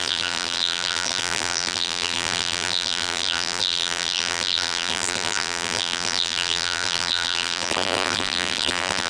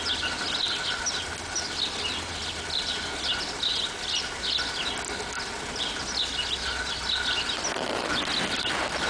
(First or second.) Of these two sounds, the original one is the second